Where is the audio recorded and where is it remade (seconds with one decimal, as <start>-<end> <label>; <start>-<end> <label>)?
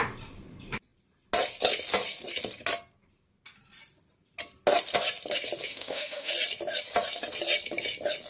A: 0.0-5.7 recorded; 5.7-6.3 remade; 6.3-8.3 recorded